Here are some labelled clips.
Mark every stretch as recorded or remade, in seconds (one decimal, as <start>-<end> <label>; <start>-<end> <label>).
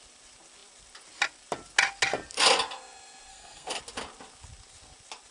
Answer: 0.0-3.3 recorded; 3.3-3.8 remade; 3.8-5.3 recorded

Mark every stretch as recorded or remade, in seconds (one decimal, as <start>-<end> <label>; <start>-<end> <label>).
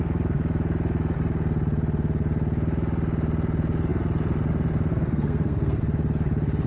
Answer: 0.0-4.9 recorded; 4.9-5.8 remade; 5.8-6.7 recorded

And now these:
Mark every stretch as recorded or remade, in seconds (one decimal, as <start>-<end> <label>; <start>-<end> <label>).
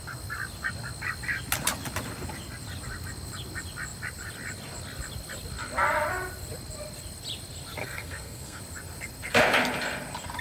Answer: 0.0-7.8 recorded; 7.8-8.6 remade; 8.6-10.4 recorded